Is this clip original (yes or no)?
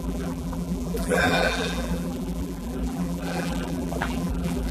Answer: no